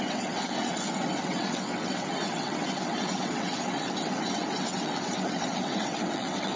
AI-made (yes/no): yes